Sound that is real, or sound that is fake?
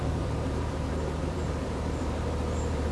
fake